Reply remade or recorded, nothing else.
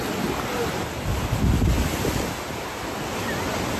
recorded